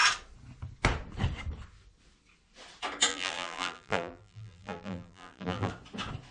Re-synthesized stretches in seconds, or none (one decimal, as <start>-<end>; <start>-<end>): 3.1-5.7